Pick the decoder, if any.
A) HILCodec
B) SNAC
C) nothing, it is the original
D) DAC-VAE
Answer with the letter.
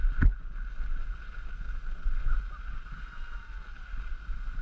C